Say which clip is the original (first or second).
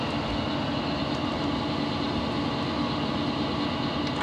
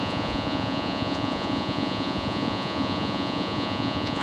first